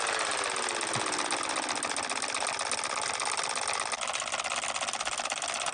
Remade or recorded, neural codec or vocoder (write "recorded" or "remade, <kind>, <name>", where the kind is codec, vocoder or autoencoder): recorded